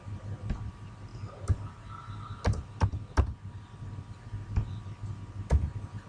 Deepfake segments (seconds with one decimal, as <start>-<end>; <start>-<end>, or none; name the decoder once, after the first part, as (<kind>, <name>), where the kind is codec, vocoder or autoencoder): none